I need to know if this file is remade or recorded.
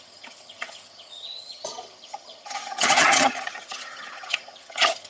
remade